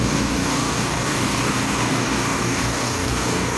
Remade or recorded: remade